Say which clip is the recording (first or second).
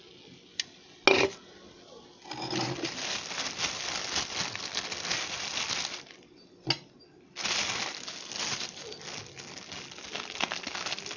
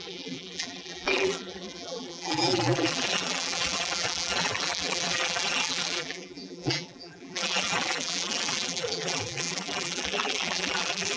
first